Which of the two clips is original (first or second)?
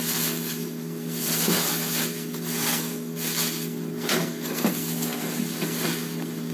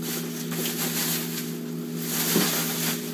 second